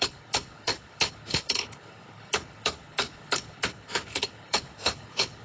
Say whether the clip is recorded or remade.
remade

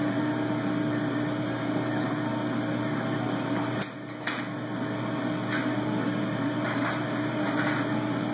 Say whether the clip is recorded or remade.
recorded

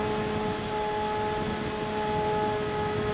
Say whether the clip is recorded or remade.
recorded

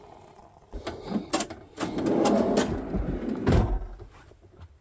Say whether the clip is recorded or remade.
recorded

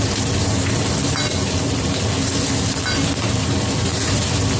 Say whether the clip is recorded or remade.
recorded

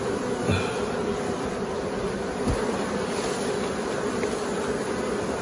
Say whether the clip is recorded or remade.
recorded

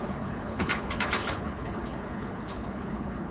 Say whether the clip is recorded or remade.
remade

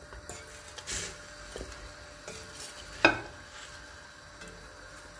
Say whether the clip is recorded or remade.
recorded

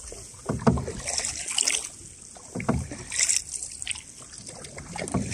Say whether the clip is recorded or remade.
recorded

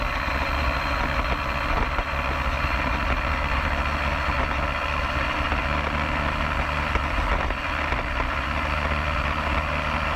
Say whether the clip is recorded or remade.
recorded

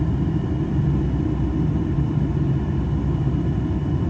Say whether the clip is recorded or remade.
remade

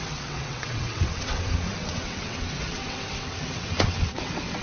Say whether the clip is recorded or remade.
remade